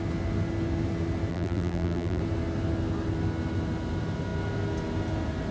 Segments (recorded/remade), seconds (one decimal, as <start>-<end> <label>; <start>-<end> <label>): 0.0-1.3 recorded; 1.3-2.2 remade; 2.2-5.5 recorded